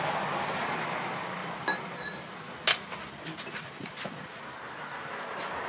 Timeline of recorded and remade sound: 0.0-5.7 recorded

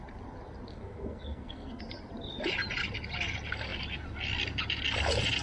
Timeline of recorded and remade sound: 0.0-0.7 recorded; 0.7-1.8 remade; 1.8-5.4 recorded

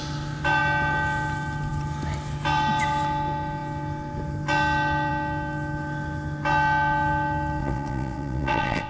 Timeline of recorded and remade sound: 0.0-7.6 recorded; 7.6-8.9 remade

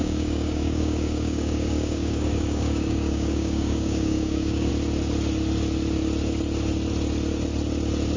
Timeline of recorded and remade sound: 0.0-4.7 remade; 4.7-8.2 recorded

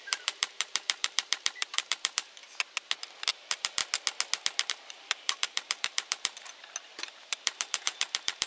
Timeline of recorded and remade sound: 0.0-2.4 remade; 2.4-3.3 recorded; 3.3-3.8 remade; 3.8-4.7 recorded; 4.7-8.5 remade